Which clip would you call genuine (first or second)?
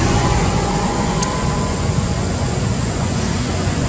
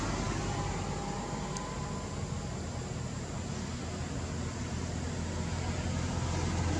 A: second